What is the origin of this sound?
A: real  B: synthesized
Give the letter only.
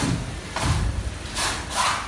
A